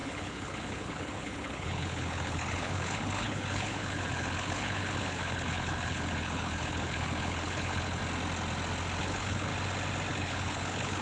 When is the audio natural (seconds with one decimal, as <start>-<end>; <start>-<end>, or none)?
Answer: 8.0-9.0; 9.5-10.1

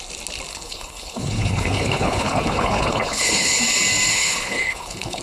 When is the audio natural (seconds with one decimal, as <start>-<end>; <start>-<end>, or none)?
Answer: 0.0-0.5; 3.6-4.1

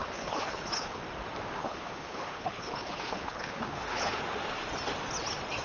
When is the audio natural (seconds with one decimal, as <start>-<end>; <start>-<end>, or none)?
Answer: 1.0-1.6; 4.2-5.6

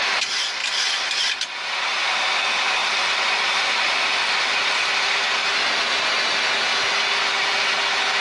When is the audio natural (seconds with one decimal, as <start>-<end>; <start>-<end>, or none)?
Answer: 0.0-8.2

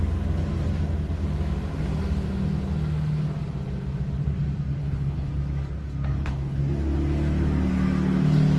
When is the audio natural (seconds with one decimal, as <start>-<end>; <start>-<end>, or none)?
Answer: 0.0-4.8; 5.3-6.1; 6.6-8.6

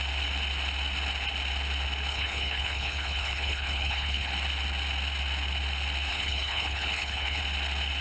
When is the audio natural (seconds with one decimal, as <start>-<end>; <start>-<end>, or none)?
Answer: 0.0-2.1; 4.3-6.1; 7.4-8.0